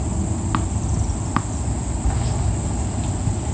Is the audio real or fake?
real